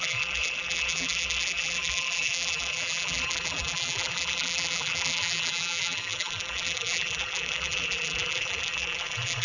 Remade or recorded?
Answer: remade